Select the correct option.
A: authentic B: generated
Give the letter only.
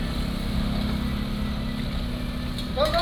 A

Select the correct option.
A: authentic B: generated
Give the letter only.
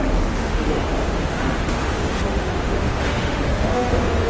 B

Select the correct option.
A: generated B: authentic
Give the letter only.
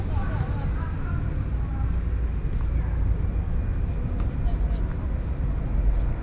B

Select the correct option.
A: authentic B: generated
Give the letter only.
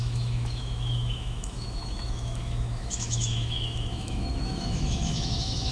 B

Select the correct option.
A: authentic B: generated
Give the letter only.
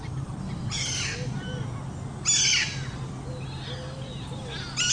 A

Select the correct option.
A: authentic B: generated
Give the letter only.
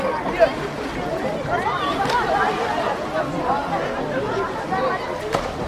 A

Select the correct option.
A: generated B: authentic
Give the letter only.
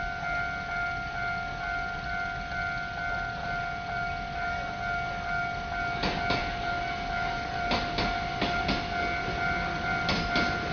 B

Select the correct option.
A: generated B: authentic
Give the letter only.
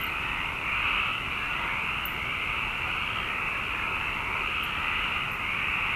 B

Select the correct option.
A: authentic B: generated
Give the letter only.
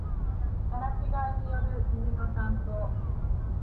A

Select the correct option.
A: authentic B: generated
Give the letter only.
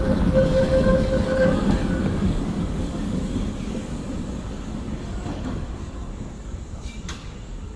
B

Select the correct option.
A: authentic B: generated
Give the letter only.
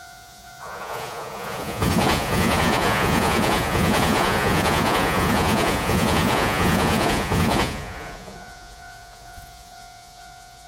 B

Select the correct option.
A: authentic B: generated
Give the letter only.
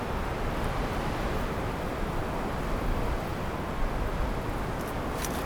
A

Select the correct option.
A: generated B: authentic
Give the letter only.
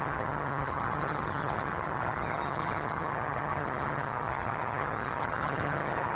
A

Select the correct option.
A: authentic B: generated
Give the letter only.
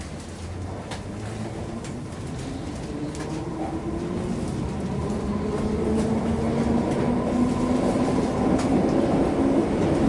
A